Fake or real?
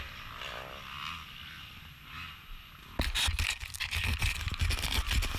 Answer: real